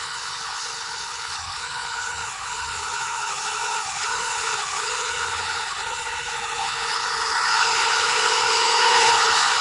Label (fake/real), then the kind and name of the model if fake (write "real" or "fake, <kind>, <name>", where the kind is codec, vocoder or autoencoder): fake, codec, HILCodec